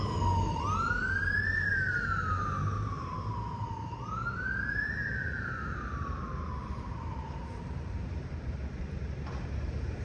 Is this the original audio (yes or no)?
no